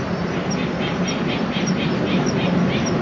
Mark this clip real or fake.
real